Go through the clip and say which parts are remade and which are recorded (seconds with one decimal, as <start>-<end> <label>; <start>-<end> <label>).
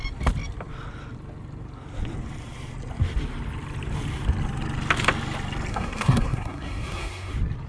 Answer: 0.0-5.7 recorded; 5.7-7.3 remade; 7.3-7.7 recorded